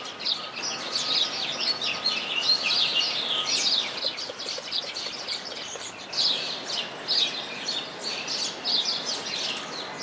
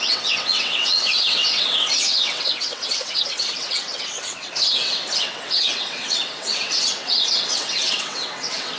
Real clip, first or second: first